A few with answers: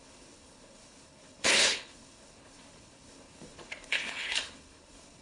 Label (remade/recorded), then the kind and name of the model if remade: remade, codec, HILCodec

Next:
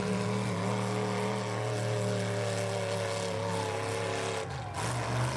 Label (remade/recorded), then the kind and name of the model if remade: recorded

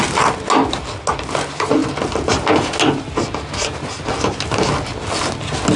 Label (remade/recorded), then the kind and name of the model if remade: recorded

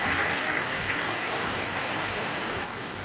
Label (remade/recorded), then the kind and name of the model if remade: remade, codec, DAC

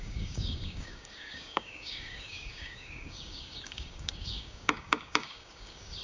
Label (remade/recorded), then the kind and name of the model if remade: remade, codec, DAC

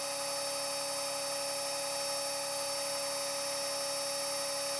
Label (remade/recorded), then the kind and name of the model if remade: recorded